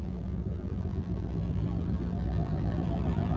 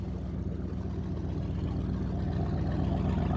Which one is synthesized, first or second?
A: first